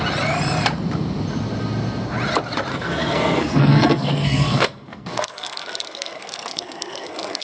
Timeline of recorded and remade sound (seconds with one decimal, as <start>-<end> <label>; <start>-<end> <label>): 0.0-2.7 recorded; 2.7-7.4 remade